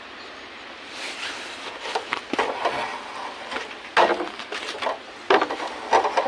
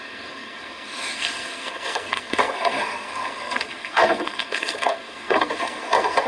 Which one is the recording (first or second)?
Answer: first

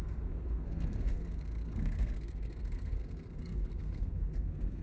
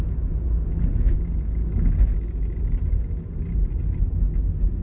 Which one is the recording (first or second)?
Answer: second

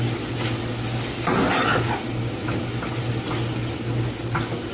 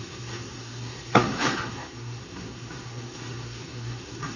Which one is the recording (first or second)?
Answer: first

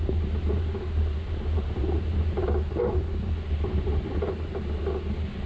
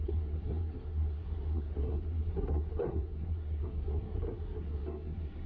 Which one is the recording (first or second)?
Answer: first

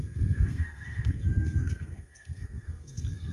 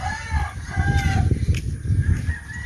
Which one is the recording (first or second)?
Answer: second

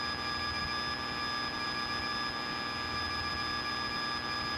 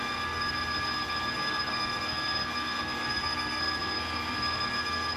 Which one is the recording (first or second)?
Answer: first